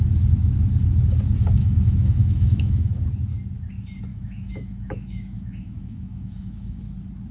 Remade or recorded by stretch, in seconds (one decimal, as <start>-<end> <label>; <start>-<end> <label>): 0.0-1.6 recorded; 1.6-2.9 remade; 2.9-4.1 recorded; 4.1-6.8 remade; 6.8-7.3 recorded